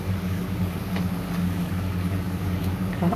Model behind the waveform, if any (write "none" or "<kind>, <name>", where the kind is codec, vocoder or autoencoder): codec, DAC